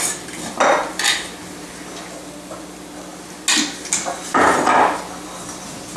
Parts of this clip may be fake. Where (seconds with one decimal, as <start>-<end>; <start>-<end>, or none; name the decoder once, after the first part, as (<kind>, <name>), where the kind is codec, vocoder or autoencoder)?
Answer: none